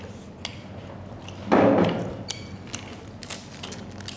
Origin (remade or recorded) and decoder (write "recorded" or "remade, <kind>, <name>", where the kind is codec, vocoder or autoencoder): recorded